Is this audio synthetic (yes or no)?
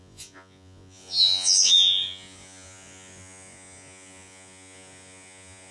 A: yes